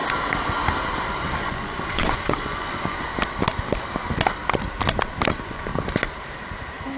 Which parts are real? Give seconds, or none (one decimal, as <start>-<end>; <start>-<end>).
0.0-1.4; 3.1-5.3; 5.7-7.0

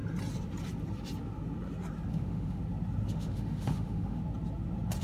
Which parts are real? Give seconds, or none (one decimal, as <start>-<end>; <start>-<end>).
0.0-2.1; 2.6-3.1; 4.2-5.0

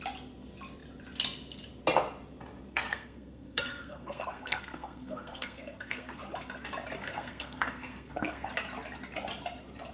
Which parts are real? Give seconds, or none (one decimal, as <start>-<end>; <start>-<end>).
0.0-2.7; 6.2-7.0; 8.5-9.9

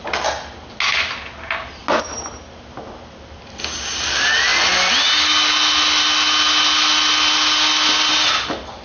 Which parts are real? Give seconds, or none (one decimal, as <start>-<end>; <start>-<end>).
0.0-8.8

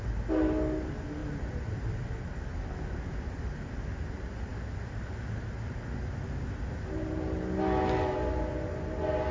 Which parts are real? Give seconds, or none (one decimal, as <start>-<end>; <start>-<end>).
0.0-1.2; 2.2-9.3

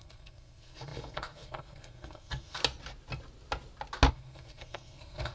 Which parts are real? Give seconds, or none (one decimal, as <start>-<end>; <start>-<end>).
2.6-4.1

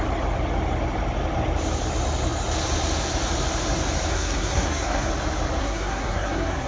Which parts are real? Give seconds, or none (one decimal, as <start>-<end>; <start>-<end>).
0.0-4.1; 5.1-5.6

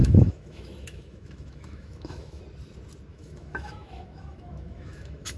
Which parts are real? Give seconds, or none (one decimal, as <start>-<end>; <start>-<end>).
2.4-3.1